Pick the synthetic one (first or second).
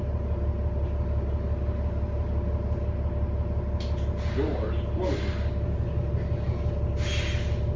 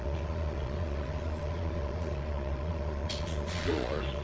second